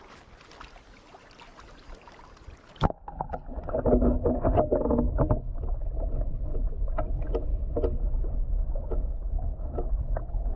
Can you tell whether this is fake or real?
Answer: real